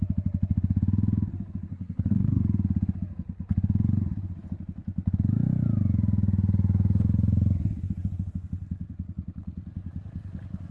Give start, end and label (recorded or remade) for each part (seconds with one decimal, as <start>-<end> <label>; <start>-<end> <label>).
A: 0.0-1.7 recorded; 1.7-2.4 remade; 2.4-10.7 recorded